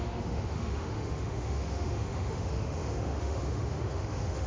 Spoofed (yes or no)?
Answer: yes